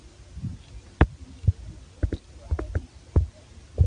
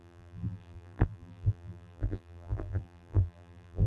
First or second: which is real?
first